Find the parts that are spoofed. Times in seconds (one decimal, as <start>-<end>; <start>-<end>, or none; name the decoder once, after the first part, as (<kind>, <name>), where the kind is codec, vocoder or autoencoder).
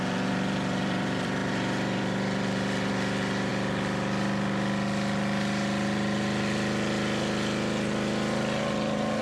0.0-3.5 (vocoder, BigVGAN v2); 8.6-9.2